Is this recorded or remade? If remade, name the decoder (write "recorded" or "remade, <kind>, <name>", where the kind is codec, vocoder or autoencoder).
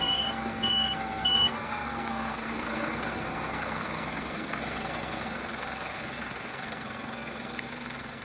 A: remade, codec, SNAC